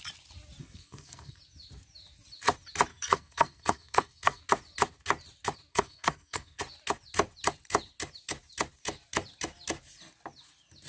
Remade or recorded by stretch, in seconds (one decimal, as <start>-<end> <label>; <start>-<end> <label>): 0.0-0.6 recorded; 0.6-1.4 remade; 1.4-2.9 recorded; 2.9-4.4 remade; 4.4-5.7 recorded; 5.7-6.6 remade; 6.6-10.9 recorded